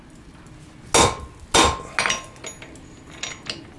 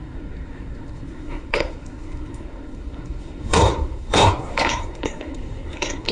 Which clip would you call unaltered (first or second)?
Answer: first